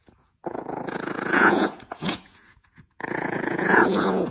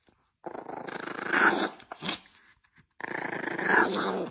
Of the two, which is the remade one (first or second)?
first